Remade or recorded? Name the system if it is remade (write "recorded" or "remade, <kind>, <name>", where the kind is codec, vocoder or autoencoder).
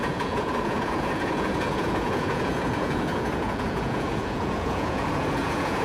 remade, vocoder, Vocos